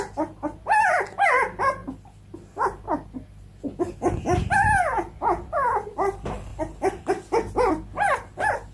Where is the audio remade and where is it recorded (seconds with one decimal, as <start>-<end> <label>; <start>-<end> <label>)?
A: 0.0-8.7 recorded